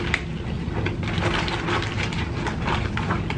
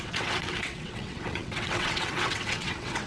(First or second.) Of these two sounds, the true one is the first